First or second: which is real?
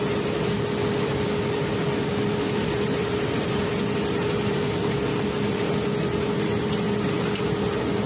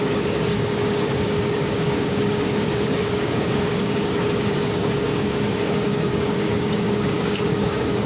first